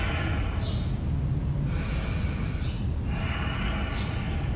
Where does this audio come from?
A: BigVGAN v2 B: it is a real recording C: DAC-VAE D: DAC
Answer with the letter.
B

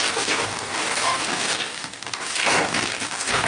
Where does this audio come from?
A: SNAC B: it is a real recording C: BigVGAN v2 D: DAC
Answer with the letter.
D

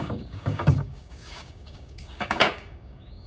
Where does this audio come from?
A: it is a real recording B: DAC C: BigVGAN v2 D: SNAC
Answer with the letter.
B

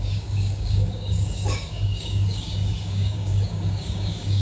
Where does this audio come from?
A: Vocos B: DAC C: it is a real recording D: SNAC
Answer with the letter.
B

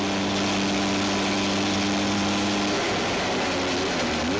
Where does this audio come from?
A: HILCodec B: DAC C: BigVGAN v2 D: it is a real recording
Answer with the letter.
D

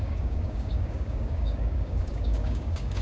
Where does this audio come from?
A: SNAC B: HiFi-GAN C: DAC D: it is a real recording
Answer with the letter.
C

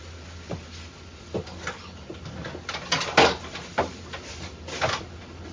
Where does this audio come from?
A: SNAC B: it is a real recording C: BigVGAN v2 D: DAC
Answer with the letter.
B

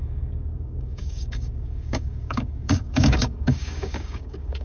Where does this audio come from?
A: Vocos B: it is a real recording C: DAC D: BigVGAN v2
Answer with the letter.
C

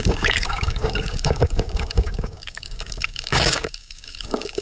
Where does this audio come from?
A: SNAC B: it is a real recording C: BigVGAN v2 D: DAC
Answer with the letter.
D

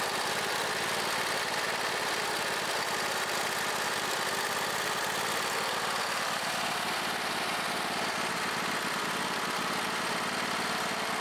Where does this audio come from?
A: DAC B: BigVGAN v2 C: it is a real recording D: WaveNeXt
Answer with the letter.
C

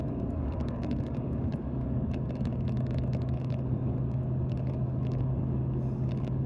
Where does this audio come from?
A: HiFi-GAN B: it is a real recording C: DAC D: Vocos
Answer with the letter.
C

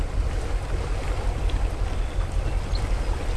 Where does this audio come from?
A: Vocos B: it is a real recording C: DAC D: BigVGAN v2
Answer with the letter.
B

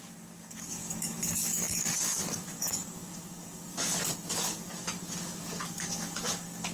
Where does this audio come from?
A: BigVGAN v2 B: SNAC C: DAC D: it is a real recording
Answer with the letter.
C